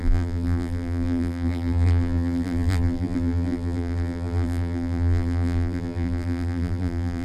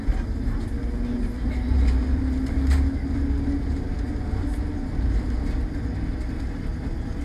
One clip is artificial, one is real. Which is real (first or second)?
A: second